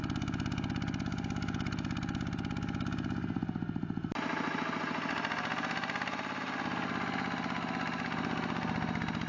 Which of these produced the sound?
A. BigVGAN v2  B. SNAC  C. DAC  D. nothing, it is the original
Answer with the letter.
D